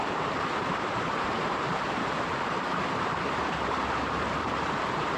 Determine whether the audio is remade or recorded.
remade